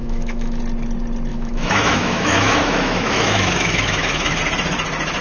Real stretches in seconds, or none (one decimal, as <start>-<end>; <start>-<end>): 0.6-1.3; 4.4-5.2